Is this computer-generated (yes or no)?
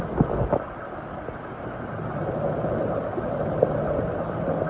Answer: no